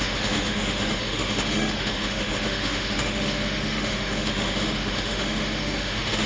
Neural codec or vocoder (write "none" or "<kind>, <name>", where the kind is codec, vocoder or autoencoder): autoencoder, DAC-VAE